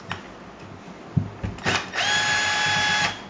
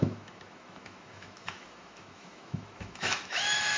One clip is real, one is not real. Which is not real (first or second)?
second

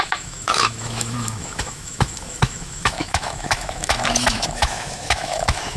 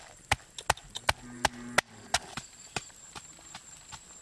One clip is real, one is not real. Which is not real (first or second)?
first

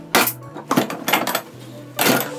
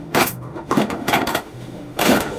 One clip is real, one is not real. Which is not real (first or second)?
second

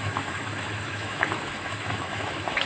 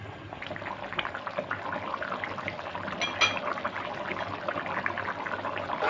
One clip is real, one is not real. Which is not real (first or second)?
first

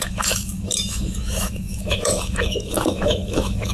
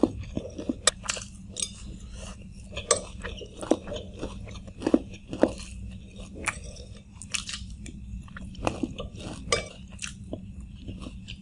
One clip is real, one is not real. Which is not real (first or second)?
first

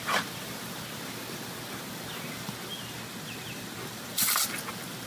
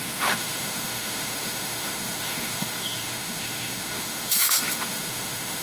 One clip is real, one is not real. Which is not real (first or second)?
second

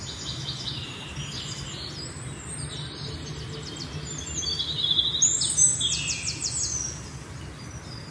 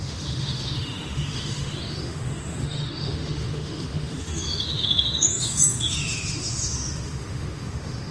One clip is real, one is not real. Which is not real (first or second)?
second